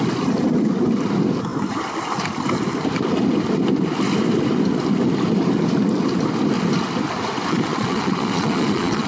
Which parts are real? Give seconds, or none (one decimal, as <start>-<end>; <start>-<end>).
0.0-7.5